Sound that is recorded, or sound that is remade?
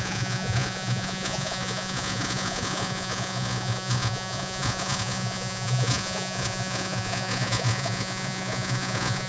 remade